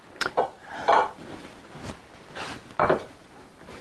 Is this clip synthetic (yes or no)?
yes